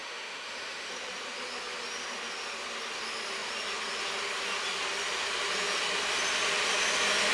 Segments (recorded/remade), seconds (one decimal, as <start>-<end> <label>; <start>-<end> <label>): 0.0-0.9 remade; 0.9-7.3 recorded